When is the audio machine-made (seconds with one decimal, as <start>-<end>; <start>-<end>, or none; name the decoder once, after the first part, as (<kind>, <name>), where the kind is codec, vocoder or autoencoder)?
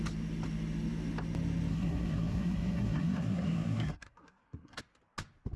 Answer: 1.7-4.8 (codec, SNAC)